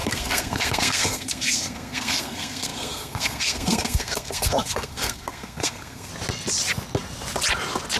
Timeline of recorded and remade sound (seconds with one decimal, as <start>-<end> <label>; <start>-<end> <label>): 0.0-6.1 remade; 6.1-8.0 recorded